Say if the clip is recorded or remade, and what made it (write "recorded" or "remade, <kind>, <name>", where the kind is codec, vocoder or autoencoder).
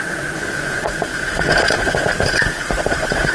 remade, vocoder, Vocos